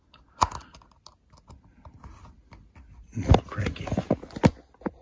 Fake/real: real